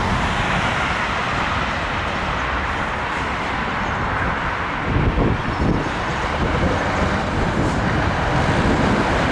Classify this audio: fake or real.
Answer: real